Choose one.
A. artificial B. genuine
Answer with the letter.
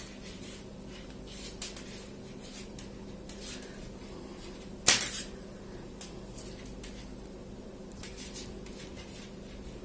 B